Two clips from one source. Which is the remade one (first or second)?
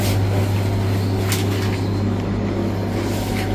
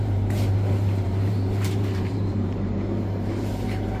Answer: second